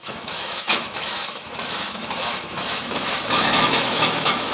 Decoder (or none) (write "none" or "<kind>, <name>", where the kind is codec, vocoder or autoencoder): autoencoder, DAC-VAE